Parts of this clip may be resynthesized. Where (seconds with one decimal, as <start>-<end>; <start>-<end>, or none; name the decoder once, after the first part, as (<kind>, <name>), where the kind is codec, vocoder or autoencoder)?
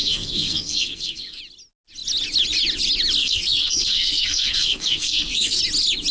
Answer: 0.0-1.4 (codec, SNAC); 3.2-5.6